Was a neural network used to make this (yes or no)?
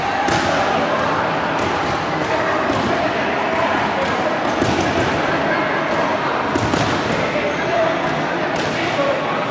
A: no